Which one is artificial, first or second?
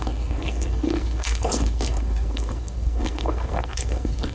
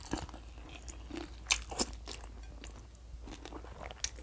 first